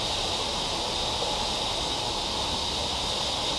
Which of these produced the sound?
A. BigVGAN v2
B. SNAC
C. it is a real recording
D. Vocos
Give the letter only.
C